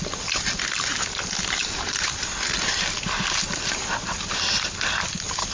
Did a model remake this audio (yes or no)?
no